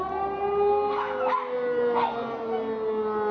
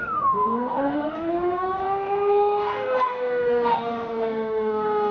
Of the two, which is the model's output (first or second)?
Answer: second